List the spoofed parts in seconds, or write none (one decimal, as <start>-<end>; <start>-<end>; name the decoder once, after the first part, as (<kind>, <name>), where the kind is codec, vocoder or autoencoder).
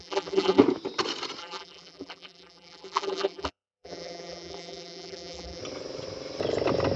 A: 0.0-0.6 (vocoder, BigVGAN v2); 1.4-5.6